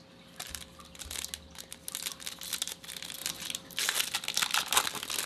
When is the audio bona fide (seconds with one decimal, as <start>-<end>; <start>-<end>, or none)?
0.0-5.3